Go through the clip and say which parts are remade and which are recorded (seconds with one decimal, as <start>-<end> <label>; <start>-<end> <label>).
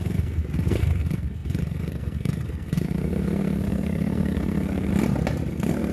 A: 0.0-4.9 remade; 4.9-5.5 recorded; 5.5-5.9 remade